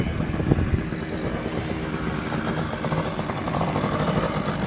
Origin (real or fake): real